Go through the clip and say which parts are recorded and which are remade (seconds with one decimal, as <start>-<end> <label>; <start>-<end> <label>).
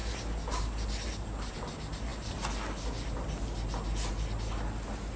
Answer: 0.0-5.2 recorded